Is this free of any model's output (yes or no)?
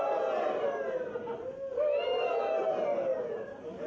yes